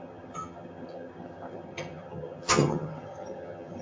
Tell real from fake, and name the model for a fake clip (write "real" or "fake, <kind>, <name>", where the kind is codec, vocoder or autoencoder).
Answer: fake, vocoder, HiFi-GAN